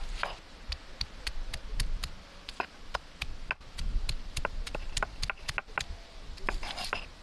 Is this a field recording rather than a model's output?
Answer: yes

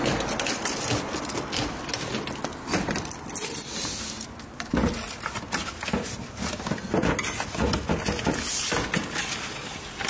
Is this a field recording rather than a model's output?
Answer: yes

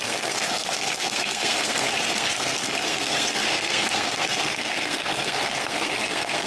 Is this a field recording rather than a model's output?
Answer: no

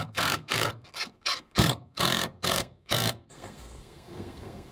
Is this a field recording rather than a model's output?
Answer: no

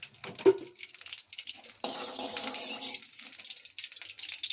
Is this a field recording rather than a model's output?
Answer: yes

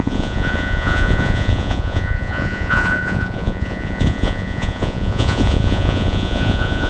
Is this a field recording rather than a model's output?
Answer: no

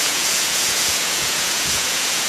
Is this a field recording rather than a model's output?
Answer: no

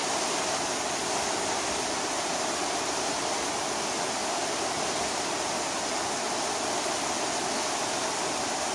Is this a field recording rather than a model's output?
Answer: yes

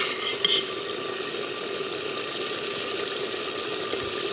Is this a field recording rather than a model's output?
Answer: yes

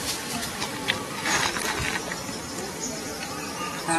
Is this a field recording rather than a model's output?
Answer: yes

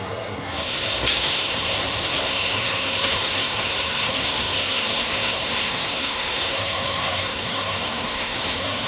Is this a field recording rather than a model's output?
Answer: no